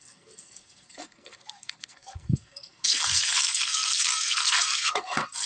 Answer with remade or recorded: remade